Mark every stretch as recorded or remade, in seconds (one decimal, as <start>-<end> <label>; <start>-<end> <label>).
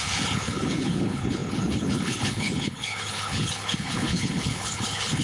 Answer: 0.0-5.2 remade